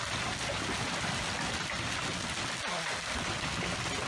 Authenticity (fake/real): real